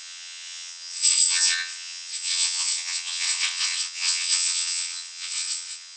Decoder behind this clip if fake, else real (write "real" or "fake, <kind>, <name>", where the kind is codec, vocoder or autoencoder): fake, vocoder, WaveNeXt